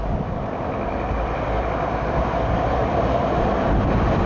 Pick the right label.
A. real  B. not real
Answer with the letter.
B